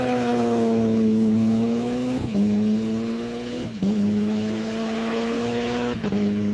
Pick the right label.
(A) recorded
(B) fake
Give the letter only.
B